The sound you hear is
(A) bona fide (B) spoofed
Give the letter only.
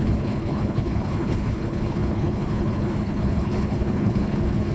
B